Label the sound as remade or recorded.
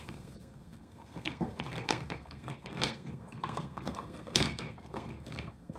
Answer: remade